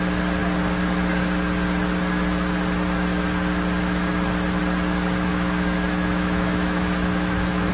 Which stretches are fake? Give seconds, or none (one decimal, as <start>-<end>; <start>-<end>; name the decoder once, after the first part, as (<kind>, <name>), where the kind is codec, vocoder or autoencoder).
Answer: 5.3-7.7 (autoencoder, DAC-VAE)